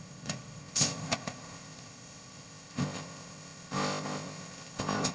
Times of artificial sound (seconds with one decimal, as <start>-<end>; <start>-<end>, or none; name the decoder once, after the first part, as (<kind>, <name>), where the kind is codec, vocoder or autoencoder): 0.0-5.1 (codec, ZipCodec)